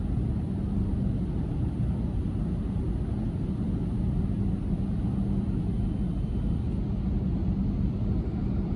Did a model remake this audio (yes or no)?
no